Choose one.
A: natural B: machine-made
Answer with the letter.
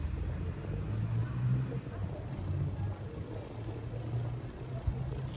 A